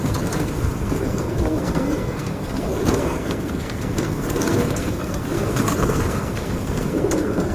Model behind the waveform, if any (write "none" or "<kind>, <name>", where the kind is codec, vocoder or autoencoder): codec, SNAC